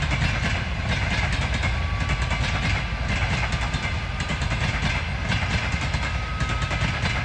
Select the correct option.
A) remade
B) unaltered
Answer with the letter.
B